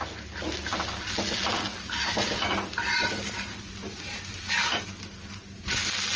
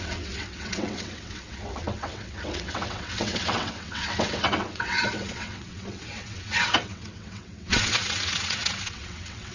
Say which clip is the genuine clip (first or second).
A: first